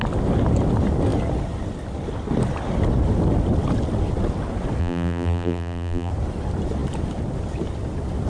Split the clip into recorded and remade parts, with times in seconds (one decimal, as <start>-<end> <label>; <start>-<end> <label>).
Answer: 0.0-4.8 recorded; 4.8-6.1 remade; 6.1-8.3 recorded